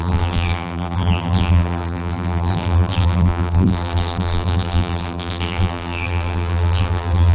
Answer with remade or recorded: remade